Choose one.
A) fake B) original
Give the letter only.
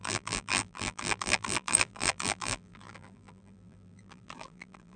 A